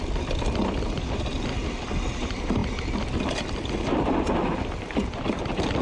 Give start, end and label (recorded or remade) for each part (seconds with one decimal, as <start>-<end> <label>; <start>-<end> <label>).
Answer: 0.0-5.8 recorded